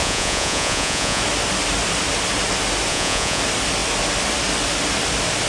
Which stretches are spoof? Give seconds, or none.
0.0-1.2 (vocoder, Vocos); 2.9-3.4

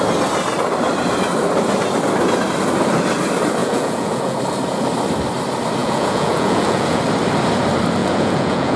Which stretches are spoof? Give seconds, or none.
3.6-4.4 (vocoder, Vocos); 5.8-7.0; 8.0-8.8

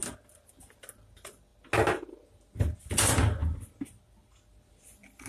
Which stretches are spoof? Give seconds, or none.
none